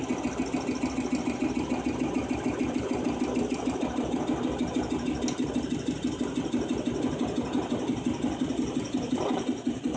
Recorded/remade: recorded